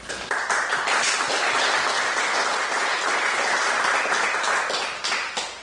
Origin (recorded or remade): recorded